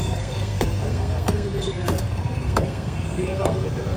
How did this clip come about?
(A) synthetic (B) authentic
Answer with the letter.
A